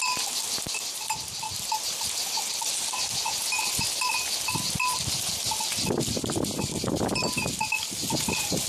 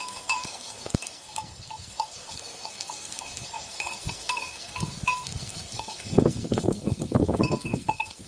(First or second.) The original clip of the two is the first